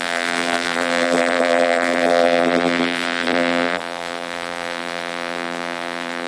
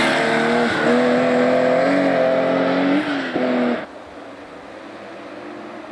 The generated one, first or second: first